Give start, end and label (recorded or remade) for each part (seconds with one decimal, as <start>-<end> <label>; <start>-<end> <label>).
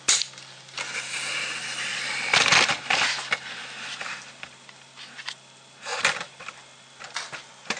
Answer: 0.0-7.8 recorded